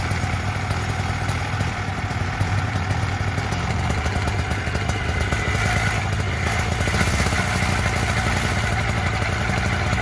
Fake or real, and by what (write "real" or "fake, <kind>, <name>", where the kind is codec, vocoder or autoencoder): real